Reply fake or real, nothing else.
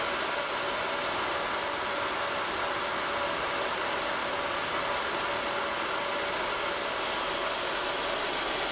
real